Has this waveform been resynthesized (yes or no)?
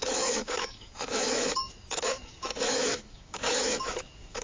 yes